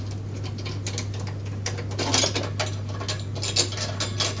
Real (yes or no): yes